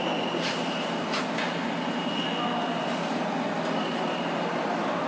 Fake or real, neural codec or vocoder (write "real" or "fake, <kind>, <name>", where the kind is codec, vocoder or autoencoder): real